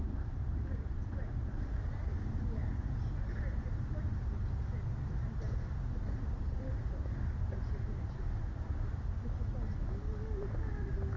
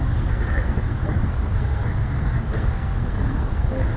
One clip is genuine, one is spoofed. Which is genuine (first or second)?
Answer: first